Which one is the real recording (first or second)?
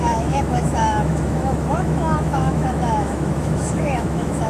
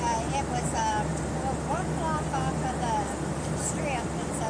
second